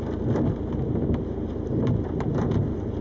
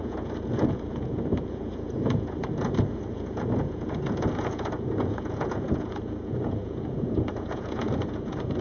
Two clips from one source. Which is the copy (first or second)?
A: second